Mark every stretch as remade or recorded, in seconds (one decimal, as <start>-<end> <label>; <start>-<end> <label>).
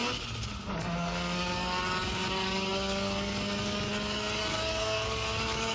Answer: 0.0-0.7 recorded; 0.7-5.7 remade